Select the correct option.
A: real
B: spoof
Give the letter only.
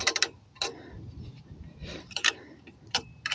B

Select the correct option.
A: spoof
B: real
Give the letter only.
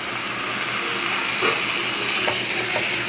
B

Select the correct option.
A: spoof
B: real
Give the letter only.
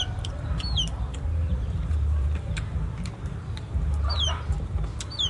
A